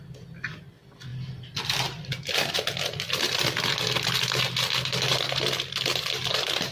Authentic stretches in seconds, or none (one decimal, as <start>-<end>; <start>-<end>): 0.0-6.7